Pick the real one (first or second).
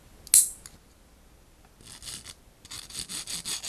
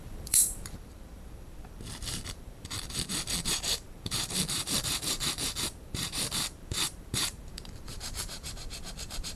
first